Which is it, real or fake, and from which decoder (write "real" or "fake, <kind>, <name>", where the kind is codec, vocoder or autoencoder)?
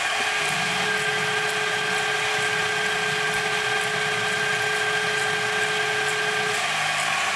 real